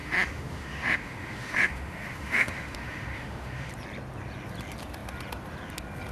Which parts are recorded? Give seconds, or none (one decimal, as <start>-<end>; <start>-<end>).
3.7-6.1